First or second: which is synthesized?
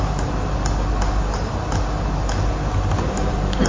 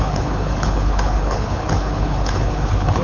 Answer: second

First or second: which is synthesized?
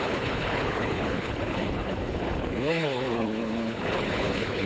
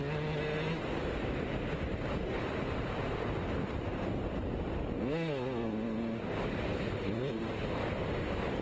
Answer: first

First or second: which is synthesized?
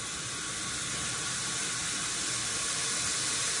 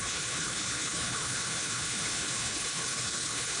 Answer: second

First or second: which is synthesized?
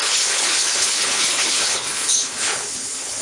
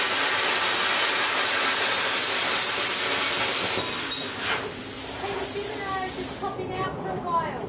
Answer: first